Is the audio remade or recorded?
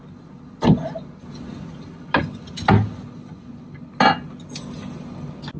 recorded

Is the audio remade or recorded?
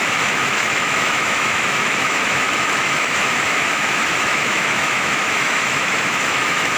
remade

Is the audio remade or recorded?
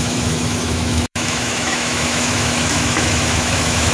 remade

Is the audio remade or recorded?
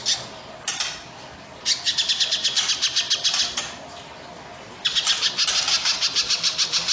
recorded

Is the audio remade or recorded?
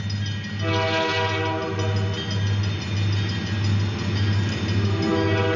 recorded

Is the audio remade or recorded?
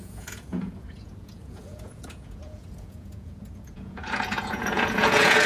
remade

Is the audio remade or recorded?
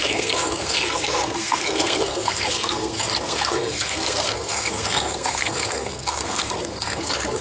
remade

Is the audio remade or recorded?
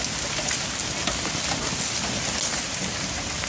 recorded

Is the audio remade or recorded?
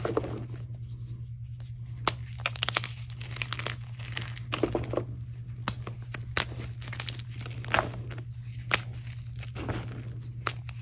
recorded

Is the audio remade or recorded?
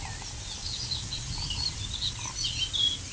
recorded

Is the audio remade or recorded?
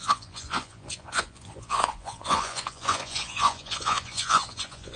remade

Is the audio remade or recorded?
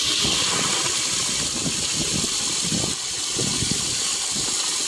remade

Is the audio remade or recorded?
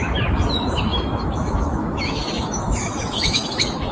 remade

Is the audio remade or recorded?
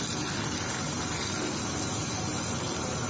recorded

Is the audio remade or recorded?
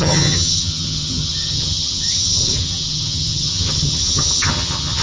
remade